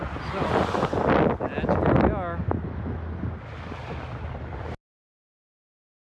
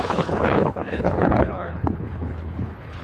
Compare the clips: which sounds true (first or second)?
first